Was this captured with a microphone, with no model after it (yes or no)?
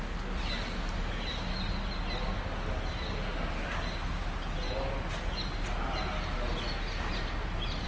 yes